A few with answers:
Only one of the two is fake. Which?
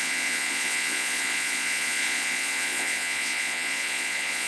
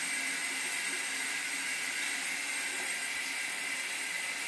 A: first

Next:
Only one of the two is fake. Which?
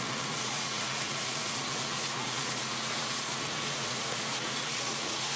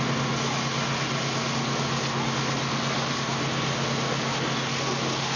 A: first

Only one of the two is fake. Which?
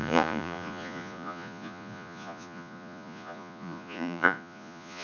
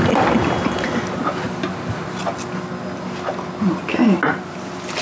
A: first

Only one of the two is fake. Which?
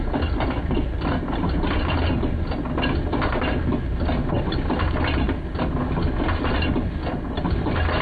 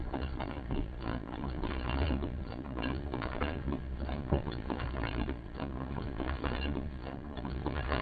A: second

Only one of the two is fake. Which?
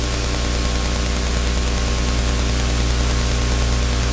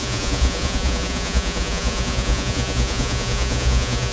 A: second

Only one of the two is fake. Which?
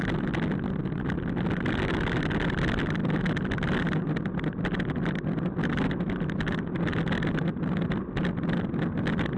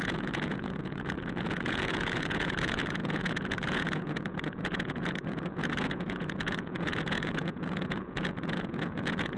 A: second